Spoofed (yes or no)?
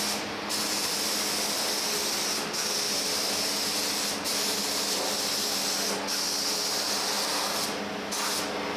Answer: no